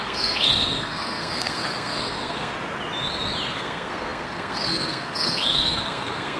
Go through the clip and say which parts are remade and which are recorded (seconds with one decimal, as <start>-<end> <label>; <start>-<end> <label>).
0.0-2.5 remade; 2.5-3.5 recorded; 3.5-6.4 remade